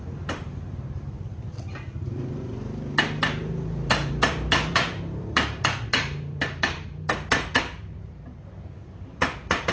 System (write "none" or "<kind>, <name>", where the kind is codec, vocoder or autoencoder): vocoder, BigVGAN v2